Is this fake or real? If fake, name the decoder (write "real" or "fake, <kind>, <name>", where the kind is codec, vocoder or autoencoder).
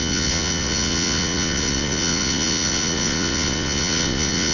fake, vocoder, Vocos